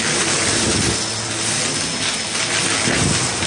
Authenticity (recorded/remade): recorded